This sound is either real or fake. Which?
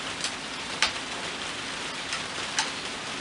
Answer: real